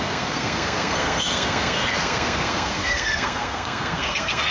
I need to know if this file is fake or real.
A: fake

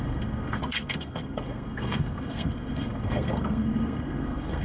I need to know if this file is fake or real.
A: fake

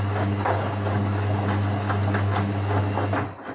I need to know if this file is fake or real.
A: real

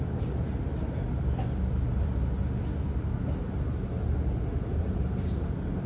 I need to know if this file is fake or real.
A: real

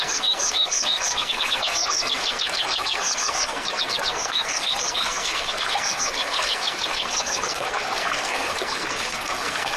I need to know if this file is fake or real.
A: fake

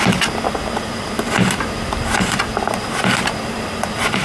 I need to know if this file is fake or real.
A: real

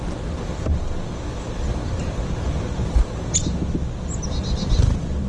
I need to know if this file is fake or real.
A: real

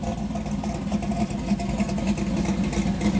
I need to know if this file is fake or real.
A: real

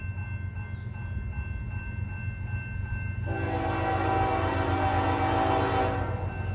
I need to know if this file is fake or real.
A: real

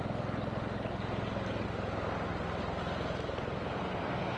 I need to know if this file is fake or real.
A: real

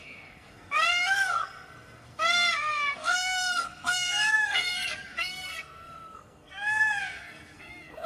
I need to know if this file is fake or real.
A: fake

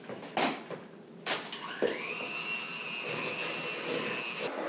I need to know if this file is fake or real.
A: real